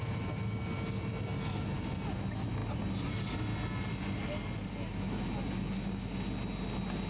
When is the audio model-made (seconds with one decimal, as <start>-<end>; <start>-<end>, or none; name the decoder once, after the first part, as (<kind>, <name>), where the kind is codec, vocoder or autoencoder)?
none